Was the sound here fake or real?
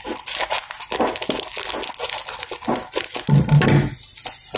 real